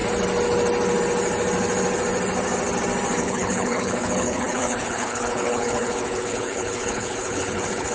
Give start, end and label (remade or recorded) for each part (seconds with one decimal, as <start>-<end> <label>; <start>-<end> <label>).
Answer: 0.0-3.2 recorded; 3.2-7.9 remade